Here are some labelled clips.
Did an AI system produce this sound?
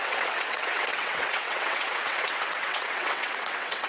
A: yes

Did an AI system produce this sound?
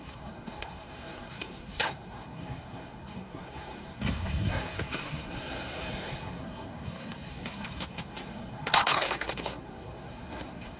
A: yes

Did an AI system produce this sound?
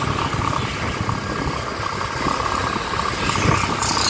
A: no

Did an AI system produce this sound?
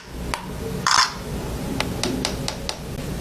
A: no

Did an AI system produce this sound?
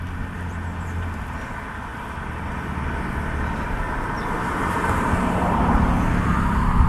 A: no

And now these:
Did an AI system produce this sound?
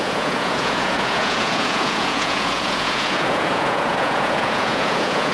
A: yes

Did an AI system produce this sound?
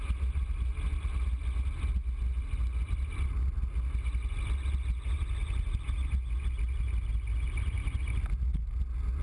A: no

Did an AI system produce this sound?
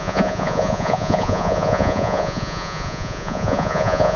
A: yes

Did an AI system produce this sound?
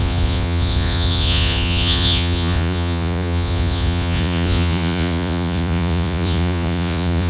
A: yes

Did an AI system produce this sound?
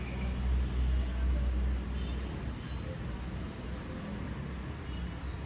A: no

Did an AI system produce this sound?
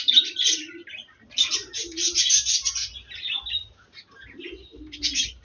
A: no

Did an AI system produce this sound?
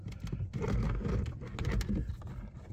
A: no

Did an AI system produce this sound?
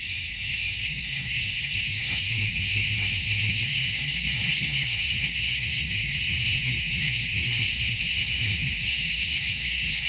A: yes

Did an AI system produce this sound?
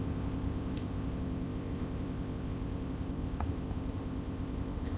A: yes